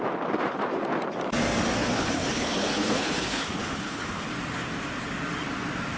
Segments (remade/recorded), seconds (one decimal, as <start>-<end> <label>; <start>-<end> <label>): 0.0-1.8 recorded; 1.8-4.3 remade; 4.3-6.0 recorded